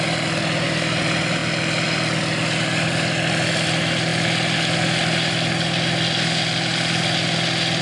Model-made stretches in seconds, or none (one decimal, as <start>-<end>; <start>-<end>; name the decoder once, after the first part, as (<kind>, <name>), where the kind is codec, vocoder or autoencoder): none

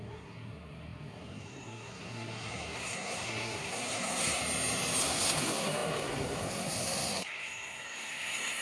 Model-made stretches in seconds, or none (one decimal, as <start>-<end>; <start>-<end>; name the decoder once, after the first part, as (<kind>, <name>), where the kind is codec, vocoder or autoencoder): 0.0-4.4 (codec, SNAC); 5.0-8.6